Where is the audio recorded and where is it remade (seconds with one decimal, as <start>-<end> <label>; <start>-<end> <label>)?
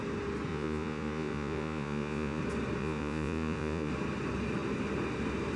0.0-0.5 recorded; 0.5-2.4 remade; 2.4-2.8 recorded; 2.8-3.9 remade; 3.9-5.6 recorded